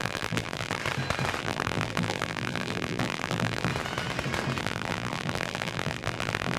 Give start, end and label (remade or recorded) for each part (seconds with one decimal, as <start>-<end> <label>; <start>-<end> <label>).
0.0-0.8 remade; 0.8-1.4 recorded; 1.4-3.7 remade; 3.7-4.6 recorded; 4.6-6.6 remade